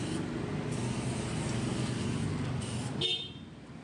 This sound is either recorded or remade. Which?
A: recorded